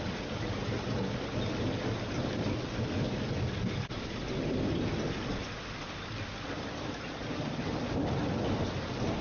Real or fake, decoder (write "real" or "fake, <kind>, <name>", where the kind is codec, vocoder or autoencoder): real